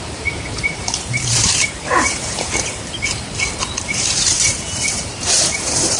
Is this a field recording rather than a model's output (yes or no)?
no